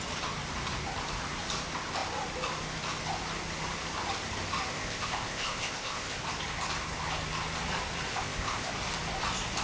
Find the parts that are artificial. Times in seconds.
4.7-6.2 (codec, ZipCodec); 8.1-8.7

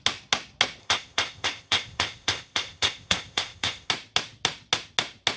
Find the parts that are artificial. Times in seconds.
0.8-3.9 (codec, ZipCodec)

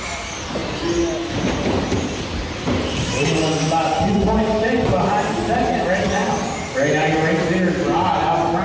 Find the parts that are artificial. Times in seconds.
none